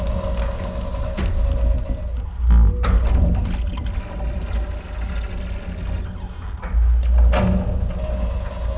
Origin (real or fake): real